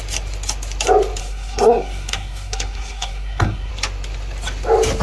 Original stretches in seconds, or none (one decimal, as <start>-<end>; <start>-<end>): 0.0-1.2; 3.7-5.0